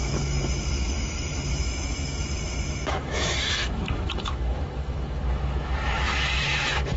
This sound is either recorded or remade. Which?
remade